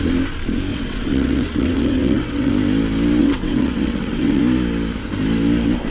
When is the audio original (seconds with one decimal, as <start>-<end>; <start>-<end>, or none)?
0.0-0.7; 2.5-3.2; 4.4-5.9